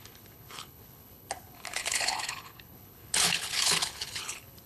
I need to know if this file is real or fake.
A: fake